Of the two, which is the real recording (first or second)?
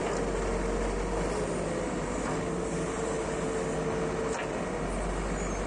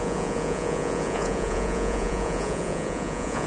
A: first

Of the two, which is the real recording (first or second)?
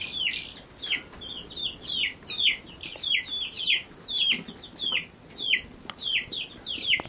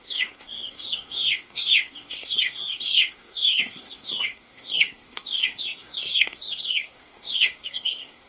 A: first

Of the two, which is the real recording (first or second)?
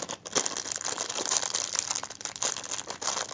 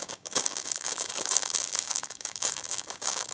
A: first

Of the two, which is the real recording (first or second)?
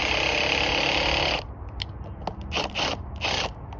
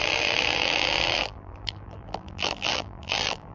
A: first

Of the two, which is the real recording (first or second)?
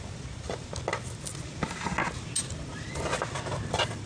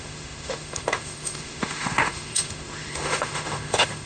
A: first